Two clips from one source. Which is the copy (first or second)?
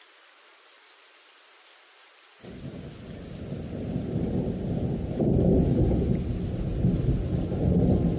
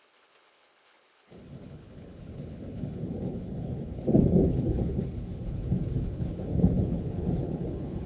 second